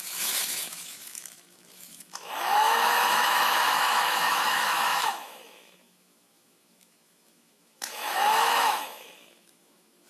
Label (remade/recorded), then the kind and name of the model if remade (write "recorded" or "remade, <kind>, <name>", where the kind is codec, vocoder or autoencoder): remade, autoencoder, DAC-VAE